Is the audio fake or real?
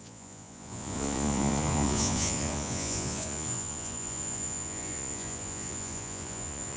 fake